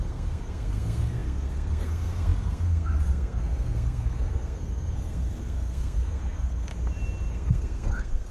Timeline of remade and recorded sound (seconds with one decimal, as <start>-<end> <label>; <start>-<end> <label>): 0.0-6.7 remade; 6.7-7.3 recorded; 7.3-8.3 remade